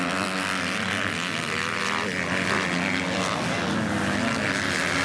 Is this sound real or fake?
real